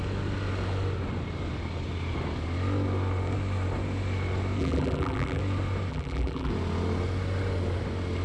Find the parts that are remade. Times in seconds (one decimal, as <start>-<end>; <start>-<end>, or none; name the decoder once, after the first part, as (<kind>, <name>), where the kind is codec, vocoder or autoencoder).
4.6-5.4 (vocoder, BigVGAN v2); 5.9-6.5